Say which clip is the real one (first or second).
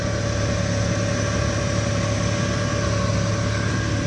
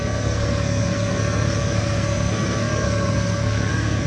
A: first